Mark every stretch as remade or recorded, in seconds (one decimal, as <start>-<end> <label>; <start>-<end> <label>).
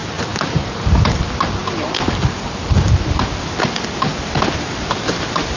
0.0-5.6 recorded